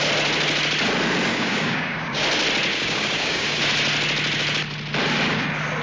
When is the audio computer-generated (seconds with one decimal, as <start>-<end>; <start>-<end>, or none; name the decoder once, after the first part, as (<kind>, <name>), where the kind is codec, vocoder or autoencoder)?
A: 1.3-2.2 (codec, DAC); 2.7-3.6

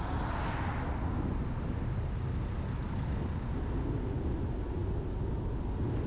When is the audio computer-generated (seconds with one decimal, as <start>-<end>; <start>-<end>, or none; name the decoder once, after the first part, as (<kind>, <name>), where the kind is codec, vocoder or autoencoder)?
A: none

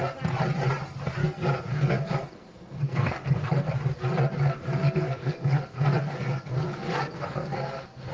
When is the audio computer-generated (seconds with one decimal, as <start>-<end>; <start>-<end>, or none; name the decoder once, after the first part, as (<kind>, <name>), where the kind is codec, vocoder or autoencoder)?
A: 1.2-3.7 (codec, SNAC); 4.8-8.1